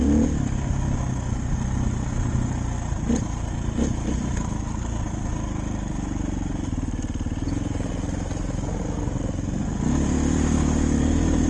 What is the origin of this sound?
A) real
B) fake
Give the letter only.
A